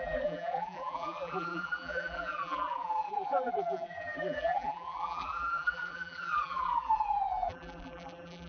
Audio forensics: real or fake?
fake